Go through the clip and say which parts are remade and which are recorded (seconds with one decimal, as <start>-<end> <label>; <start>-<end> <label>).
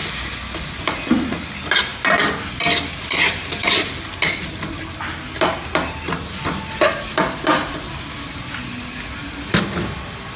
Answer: 0.0-10.4 recorded